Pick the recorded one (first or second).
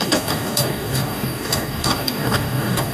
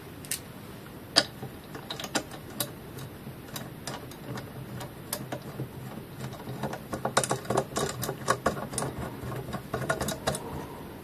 second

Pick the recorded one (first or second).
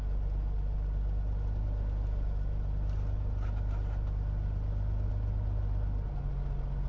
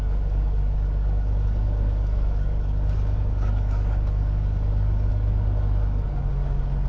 first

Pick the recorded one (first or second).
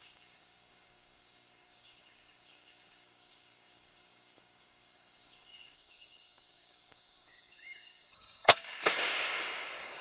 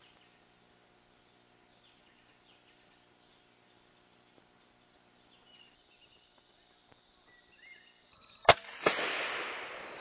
second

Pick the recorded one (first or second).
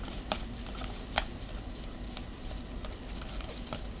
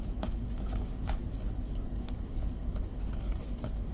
first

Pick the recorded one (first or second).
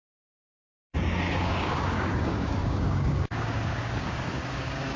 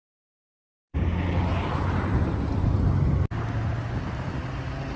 second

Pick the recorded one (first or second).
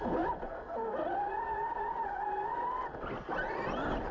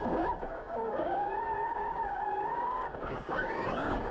first